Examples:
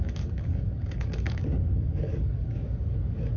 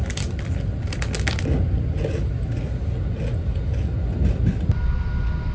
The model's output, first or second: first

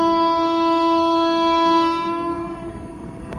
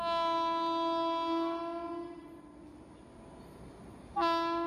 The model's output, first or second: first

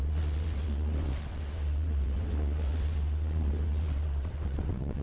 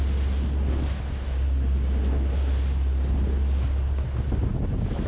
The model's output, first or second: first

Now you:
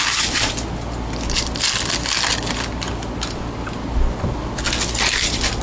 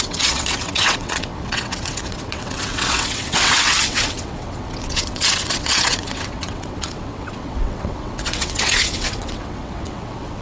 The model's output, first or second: second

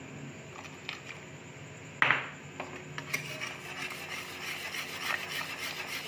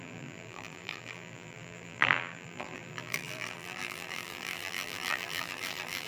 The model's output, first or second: second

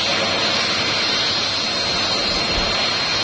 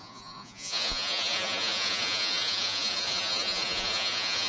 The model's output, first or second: second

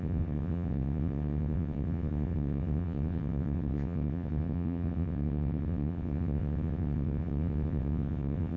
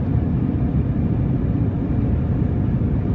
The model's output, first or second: first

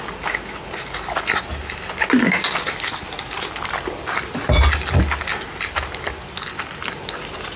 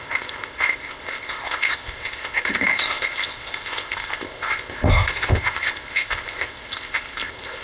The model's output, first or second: second